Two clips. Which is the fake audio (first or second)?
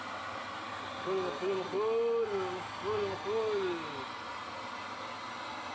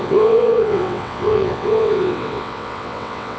second